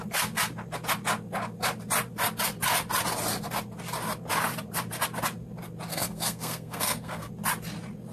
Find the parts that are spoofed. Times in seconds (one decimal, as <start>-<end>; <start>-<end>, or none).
5.9-7.3